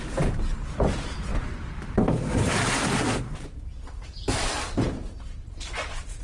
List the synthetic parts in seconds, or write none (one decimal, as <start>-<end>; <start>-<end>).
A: 0.0-1.3; 2.9-6.2